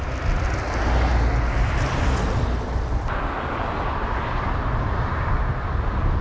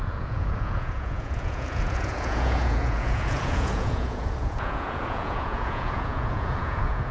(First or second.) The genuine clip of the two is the first